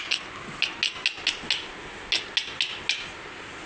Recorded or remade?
recorded